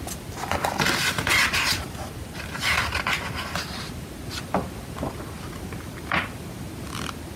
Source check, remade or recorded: recorded